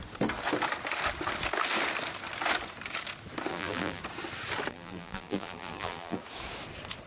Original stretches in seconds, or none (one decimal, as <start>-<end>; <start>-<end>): 0.0-3.5; 4.0-4.7; 6.2-7.1